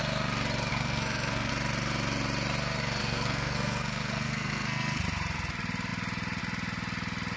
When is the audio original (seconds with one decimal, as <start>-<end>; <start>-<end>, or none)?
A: 0.0-0.7; 1.5-3.0; 5.0-7.4